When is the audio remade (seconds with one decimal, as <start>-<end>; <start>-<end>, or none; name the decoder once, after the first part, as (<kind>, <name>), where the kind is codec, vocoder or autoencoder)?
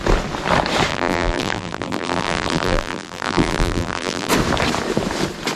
0.9-4.3 (vocoder, BigVGAN v2)